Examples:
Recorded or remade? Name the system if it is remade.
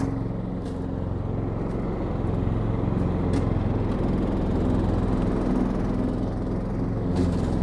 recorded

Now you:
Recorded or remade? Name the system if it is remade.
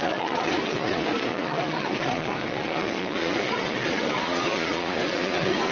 remade, vocoder, Vocos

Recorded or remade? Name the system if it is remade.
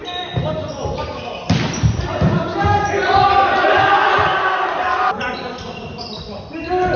recorded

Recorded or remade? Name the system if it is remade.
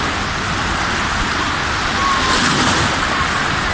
recorded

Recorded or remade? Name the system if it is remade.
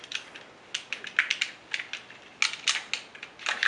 recorded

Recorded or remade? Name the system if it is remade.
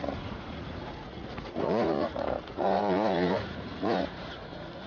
remade, vocoder, Vocos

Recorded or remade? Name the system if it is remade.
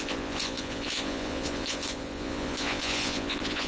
remade, vocoder, Vocos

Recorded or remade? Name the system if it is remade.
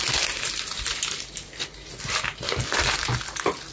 recorded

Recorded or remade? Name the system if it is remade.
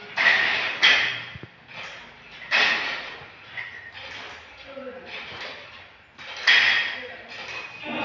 recorded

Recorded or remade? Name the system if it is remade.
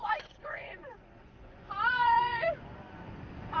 remade, vocoder, Vocos